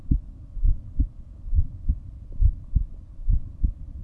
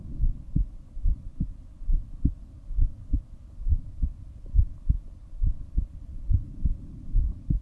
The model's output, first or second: second